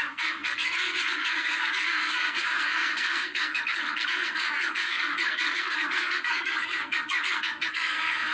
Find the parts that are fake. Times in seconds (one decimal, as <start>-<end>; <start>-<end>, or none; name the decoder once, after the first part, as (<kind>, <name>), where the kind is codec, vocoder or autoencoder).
0.0-8.3 (codec, SNAC)